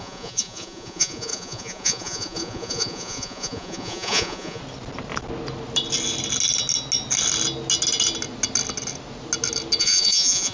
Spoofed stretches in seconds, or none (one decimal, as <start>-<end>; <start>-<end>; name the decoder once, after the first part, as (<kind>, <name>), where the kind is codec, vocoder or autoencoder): 0.0-4.6 (vocoder, Vocos); 9.8-10.5